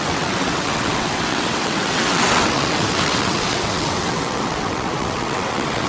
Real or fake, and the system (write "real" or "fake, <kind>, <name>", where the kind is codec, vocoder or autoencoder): fake, vocoder, WaveNeXt